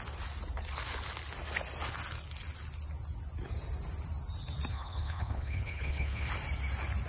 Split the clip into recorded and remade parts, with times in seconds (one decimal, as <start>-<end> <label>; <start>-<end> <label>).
0.0-4.7 recorded; 4.7-6.3 remade; 6.3-7.1 recorded